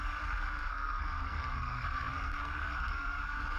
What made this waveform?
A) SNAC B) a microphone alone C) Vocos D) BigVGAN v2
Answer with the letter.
A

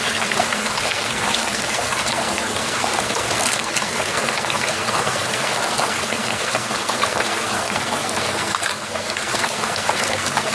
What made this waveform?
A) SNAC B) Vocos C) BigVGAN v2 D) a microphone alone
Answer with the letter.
A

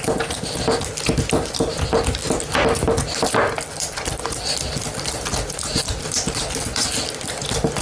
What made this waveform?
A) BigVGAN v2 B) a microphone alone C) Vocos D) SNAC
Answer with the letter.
B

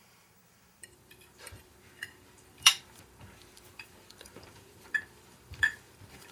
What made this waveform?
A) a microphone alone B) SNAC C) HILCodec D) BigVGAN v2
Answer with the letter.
D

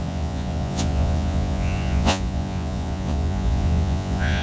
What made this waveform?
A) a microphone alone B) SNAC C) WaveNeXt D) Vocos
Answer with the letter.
D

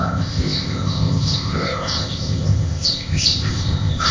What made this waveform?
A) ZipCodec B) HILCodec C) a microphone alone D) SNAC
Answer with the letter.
A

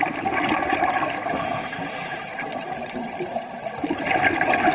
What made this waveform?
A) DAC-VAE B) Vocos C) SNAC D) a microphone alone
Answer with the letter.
D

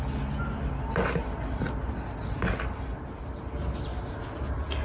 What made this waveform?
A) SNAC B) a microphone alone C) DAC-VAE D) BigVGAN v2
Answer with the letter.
B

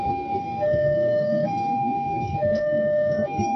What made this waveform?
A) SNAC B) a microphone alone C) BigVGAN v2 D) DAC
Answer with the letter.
A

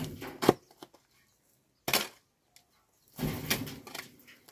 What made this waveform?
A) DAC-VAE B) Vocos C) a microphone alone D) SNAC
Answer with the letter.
C